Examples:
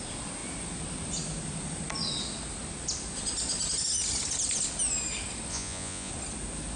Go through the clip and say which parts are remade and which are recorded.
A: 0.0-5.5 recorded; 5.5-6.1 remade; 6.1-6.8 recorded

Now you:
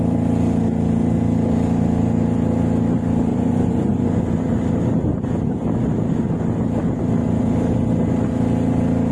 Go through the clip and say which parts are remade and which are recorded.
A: 0.0-3.3 recorded; 3.3-4.2 remade; 4.2-9.1 recorded

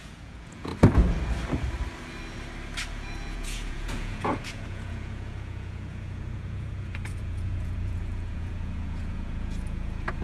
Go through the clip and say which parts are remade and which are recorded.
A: 0.0-0.7 remade; 0.7-2.9 recorded; 2.9-10.2 remade

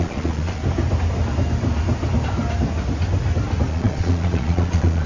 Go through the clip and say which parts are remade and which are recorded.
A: 0.0-0.6 remade; 0.6-3.7 recorded; 3.7-5.1 remade